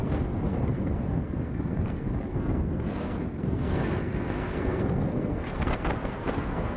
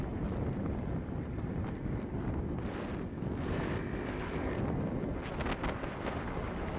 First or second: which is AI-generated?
first